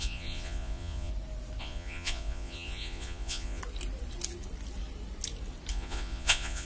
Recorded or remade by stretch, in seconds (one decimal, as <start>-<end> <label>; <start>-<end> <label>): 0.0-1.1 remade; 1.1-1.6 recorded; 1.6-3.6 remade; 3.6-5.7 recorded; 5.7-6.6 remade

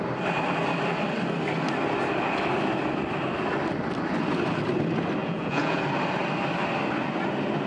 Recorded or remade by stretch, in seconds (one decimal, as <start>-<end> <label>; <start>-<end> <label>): 0.0-5.2 recorded; 5.2-5.8 remade; 5.8-7.7 recorded

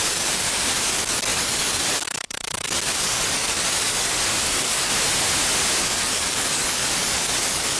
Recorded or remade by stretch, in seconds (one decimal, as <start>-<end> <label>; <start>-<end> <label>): 0.0-4.9 remade; 4.9-5.8 recorded; 5.8-7.8 remade

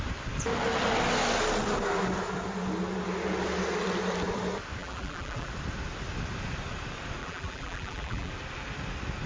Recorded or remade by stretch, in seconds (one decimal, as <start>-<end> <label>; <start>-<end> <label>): 0.0-4.8 recorded; 4.8-5.5 remade; 5.5-7.2 recorded; 7.2-8.3 remade; 8.3-9.3 recorded

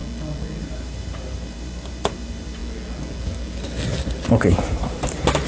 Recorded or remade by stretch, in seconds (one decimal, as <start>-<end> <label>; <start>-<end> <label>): 0.0-0.6 recorded; 0.6-2.6 remade; 2.6-4.2 recorded; 4.2-5.5 remade